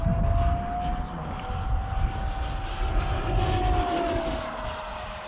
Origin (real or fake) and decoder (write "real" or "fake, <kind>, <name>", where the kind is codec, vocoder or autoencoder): real